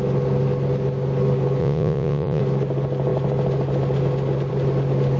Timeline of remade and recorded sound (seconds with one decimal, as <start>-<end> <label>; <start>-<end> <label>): 0.0-1.6 recorded; 1.6-2.4 remade; 2.4-5.2 recorded